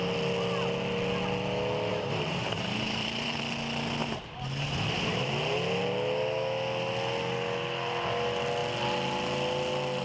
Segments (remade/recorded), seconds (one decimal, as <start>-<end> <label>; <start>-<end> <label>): 0.0-1.9 recorded; 1.9-3.4 remade; 3.4-4.0 recorded; 4.0-5.3 remade; 5.3-10.0 recorded